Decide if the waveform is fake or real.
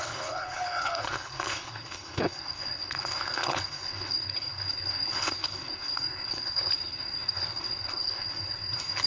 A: fake